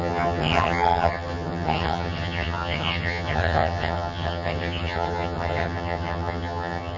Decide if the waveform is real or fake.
fake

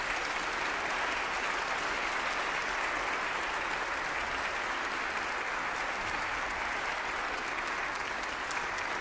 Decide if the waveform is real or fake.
real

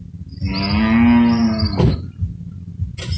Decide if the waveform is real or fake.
real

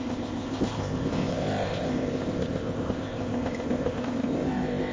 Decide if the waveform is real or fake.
fake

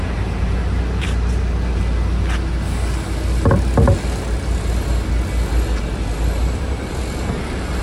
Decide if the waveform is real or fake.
real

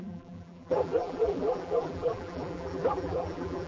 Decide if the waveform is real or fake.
fake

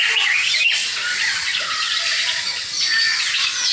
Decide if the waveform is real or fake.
real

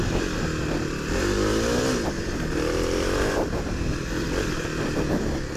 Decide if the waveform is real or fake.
fake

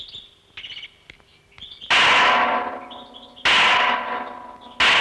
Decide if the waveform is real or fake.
real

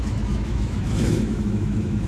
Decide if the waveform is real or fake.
fake